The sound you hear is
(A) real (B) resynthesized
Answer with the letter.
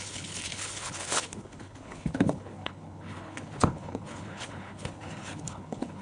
B